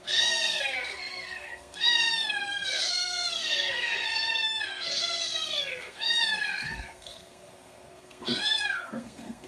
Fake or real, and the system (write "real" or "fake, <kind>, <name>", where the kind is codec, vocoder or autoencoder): fake, codec, SNAC